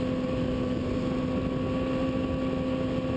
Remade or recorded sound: recorded